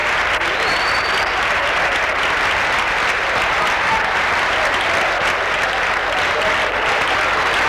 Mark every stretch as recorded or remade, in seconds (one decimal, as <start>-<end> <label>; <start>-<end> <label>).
0.0-7.7 recorded